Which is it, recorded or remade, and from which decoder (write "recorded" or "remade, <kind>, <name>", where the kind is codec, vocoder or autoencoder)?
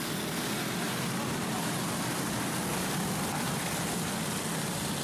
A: remade, vocoder, BigVGAN v2